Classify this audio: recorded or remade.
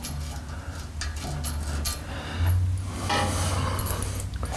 recorded